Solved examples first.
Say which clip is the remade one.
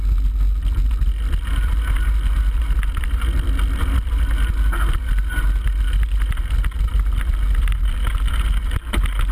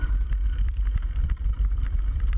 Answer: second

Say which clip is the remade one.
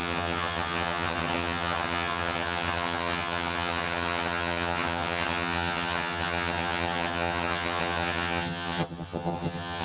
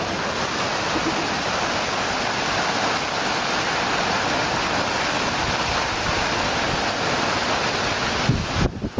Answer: first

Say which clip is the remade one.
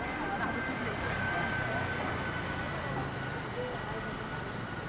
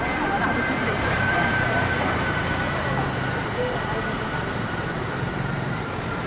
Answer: second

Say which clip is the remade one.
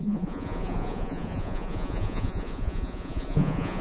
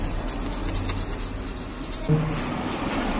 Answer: first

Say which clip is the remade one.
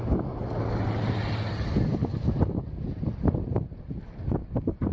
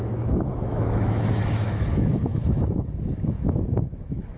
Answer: second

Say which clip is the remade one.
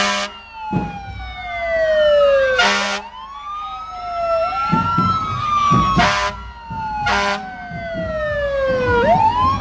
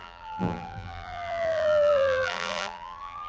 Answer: second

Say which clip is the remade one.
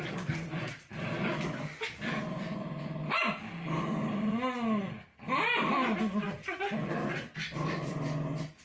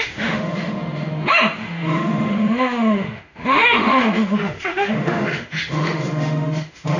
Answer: second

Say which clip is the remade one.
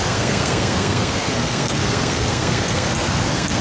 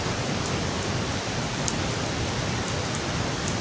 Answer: first